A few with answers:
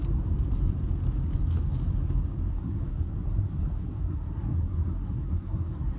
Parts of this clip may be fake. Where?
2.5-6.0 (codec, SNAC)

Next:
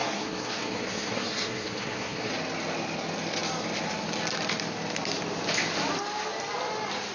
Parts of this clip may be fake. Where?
0.0-2.3 (codec, SNAC)

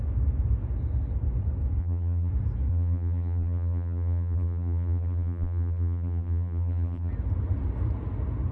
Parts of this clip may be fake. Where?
1.8-2.3 (vocoder, BigVGAN v2); 2.7-7.1